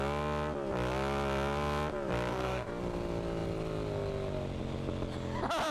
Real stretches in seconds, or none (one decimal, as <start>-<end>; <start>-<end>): 0.0-2.3; 2.8-5.7